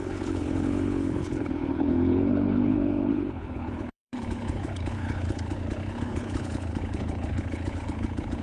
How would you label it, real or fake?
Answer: fake